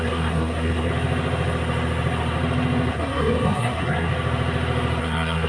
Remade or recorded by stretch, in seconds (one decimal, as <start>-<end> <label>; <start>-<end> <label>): 0.0-0.9 remade; 0.9-2.9 recorded; 2.9-4.1 remade; 4.1-5.0 recorded; 5.0-5.5 remade

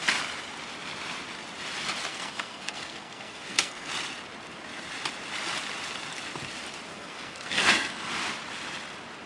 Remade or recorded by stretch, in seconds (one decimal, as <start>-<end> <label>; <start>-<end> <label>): 0.0-2.1 recorded; 2.1-3.9 remade; 3.9-6.9 recorded; 6.9-8.1 remade; 8.1-9.3 recorded

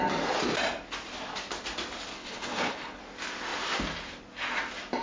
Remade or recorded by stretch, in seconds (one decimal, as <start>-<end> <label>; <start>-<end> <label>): 0.0-2.1 recorded; 2.1-3.0 remade; 3.0-5.0 recorded